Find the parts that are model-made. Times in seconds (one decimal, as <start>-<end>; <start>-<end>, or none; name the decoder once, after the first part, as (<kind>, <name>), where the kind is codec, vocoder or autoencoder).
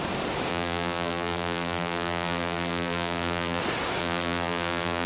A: 0.5-3.6 (vocoder, BigVGAN v2); 4.0-5.1